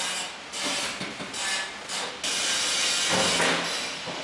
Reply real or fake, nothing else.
real